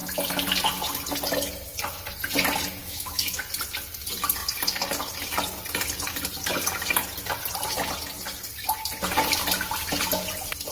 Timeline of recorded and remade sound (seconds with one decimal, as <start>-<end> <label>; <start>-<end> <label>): 0.0-2.8 recorded; 2.8-3.4 remade; 3.4-10.7 recorded